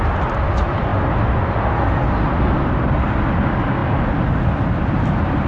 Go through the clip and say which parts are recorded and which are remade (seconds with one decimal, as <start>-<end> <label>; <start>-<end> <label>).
0.0-5.5 recorded